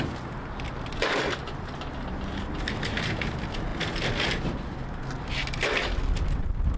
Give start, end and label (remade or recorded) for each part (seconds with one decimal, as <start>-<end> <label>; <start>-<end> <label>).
0.0-6.8 recorded